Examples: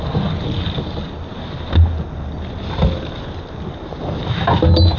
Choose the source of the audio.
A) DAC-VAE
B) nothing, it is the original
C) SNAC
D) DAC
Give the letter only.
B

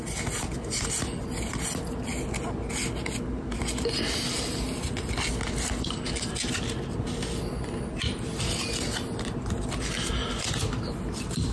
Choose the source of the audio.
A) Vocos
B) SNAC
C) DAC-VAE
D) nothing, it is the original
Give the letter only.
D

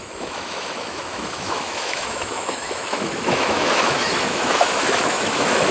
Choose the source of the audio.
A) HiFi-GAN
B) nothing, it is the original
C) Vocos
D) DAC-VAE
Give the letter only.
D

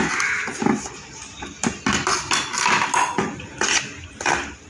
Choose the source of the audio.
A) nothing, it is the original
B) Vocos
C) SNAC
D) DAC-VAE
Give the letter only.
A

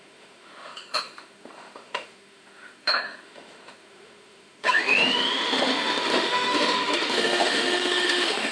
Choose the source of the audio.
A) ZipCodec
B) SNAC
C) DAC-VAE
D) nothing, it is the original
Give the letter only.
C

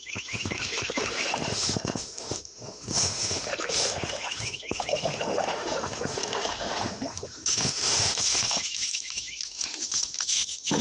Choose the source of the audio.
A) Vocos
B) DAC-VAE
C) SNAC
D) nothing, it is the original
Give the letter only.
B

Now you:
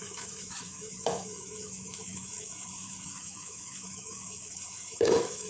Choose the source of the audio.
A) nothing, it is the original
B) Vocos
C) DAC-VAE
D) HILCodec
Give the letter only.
C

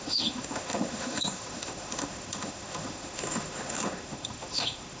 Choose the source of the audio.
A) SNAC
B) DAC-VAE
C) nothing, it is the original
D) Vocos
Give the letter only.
B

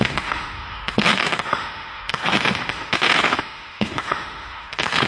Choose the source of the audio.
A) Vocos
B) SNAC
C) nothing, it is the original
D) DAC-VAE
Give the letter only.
D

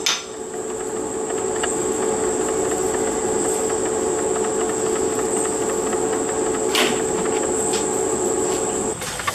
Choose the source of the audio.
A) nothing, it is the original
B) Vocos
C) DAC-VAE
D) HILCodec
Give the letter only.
A